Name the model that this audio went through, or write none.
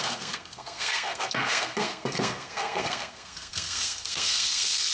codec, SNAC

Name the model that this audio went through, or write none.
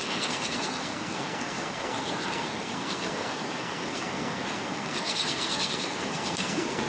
codec, SNAC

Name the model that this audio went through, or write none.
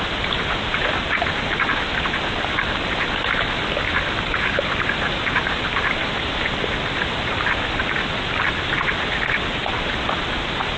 none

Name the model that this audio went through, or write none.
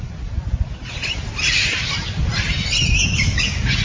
none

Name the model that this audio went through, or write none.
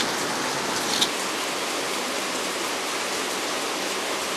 none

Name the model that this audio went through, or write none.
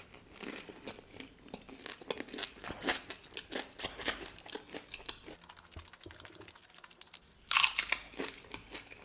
none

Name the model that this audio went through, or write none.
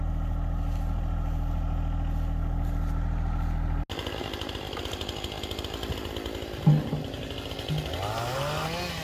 none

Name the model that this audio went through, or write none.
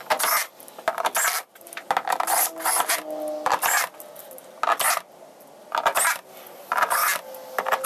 none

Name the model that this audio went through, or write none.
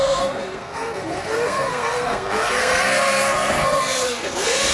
codec, SNAC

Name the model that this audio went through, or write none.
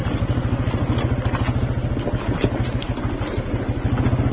none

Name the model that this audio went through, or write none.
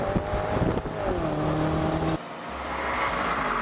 none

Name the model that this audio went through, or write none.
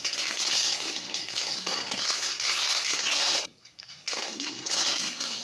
codec, SNAC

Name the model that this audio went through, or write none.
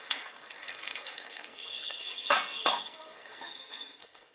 codec, SNAC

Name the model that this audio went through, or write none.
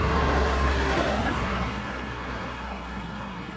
codec, SNAC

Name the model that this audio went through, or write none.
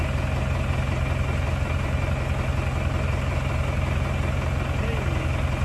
none